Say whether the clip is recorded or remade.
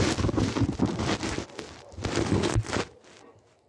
recorded